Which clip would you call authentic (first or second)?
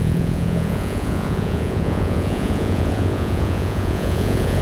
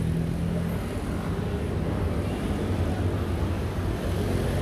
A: second